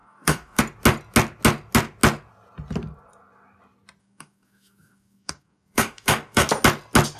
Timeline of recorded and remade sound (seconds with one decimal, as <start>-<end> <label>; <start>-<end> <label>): 0.0-0.6 remade; 0.6-4.0 recorded; 4.0-6.5 remade; 6.5-7.2 recorded